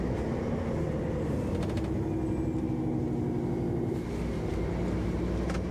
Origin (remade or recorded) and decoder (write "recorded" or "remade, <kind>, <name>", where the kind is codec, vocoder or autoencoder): recorded